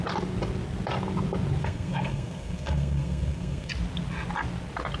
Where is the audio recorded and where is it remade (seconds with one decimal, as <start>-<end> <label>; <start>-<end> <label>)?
0.0-1.6 recorded; 1.6-3.7 remade; 3.7-5.0 recorded